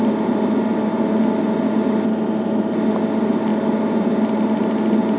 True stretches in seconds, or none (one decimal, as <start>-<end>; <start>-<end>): 0.0-5.2